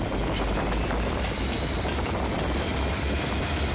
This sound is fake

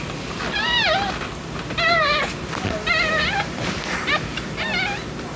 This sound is fake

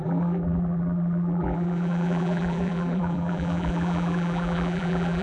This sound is fake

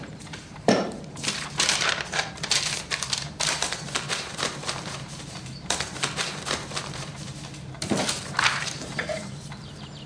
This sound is fake